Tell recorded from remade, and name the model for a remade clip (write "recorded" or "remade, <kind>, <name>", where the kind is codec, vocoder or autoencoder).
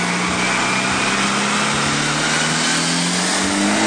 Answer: recorded